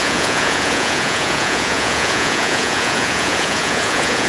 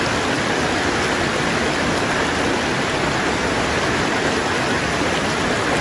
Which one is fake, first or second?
first